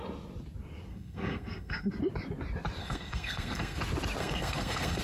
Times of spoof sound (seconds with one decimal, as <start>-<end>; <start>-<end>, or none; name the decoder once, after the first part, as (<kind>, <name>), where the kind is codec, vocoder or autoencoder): 0.9-1.9 (codec, SNAC); 2.8-3.8; 4.2-5.0